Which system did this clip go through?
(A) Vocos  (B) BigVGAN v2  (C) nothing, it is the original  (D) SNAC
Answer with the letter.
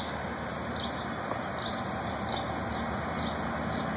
C